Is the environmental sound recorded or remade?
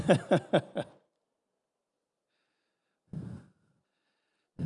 recorded